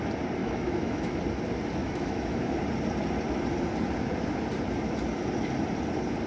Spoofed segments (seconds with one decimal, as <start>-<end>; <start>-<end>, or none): 0.4-1.2; 1.8-2.6